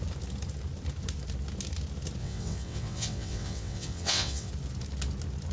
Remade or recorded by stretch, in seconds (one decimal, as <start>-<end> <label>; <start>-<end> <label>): 0.0-2.2 recorded; 2.2-4.5 remade; 4.5-5.5 recorded